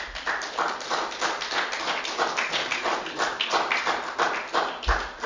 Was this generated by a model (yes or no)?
no